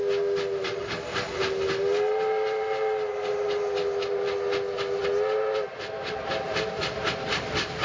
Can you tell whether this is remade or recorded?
recorded